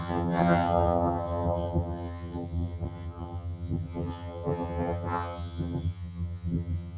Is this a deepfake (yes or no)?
yes